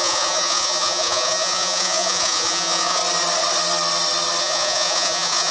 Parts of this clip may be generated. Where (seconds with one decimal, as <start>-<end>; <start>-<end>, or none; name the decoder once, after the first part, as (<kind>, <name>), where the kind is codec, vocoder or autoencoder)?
0.0-3.0 (vocoder, Vocos); 4.4-5.5